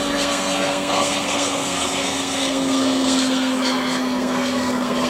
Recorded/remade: remade